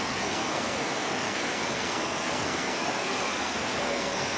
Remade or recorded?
remade